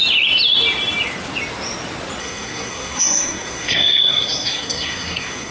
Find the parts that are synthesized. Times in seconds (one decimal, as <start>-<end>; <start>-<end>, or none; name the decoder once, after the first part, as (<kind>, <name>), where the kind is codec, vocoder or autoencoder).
2.2-5.5 (codec, SNAC)